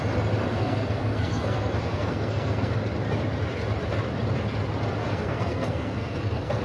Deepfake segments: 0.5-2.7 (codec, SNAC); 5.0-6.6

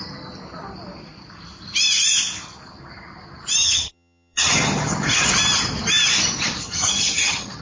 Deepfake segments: 3.6-5.3 (vocoder, HiFi-GAN); 6.6-7.6

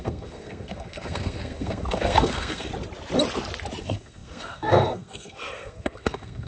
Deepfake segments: 0.0-2.7 (codec, SNAC); 3.8-6.5

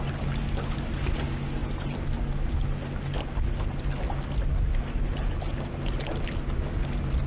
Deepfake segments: none

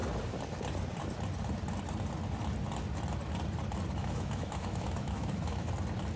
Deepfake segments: 4.0-5.7 (autoencoder, DAC-VAE)

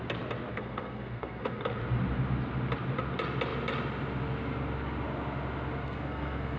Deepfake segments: 0.5-1.6 (codec, SNAC); 5.8-6.6

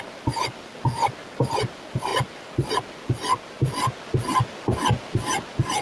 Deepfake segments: none

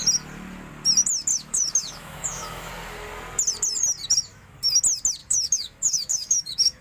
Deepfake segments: 1.3-2.7 (autoencoder, DAC-VAE); 4.3-4.8; 5.2-6.8